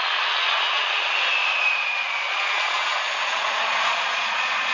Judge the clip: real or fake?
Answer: fake